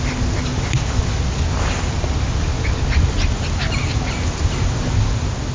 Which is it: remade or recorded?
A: recorded